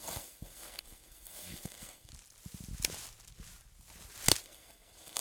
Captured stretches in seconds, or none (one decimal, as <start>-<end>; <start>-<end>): 2.1-4.4